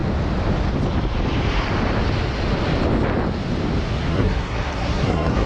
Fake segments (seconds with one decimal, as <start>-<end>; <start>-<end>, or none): 4.1-5.5